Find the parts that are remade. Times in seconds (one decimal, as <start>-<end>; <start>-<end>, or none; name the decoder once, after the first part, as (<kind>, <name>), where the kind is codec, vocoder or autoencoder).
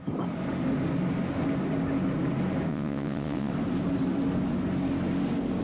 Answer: 2.7-3.5 (vocoder, WaveNeXt)